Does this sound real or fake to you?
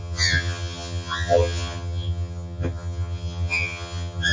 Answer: fake